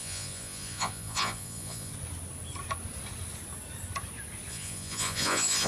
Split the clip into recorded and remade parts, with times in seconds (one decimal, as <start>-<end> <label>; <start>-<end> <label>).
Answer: 0.0-1.9 remade; 1.9-4.5 recorded; 4.5-5.7 remade